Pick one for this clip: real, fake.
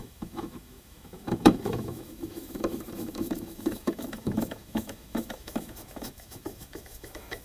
fake